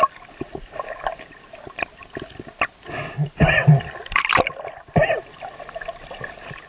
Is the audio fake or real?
real